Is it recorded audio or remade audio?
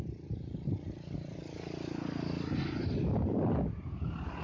recorded